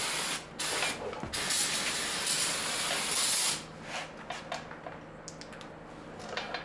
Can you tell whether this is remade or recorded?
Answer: recorded